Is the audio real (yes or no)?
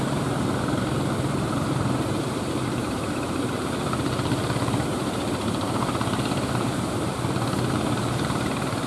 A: no